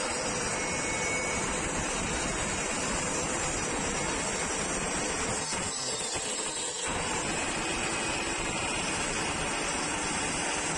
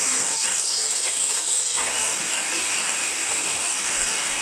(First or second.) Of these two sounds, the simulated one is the second